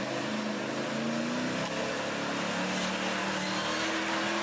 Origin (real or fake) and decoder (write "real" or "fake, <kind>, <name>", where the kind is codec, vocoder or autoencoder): real